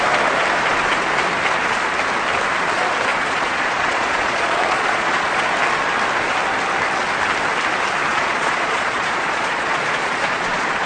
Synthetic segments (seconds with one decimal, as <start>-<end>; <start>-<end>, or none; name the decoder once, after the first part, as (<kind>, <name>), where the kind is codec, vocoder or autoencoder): 3.1-5.4 (vocoder, Vocos); 8.1-10.9